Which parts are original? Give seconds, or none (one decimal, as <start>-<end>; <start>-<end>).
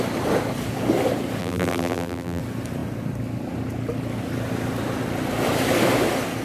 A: 0.0-1.4; 2.4-6.4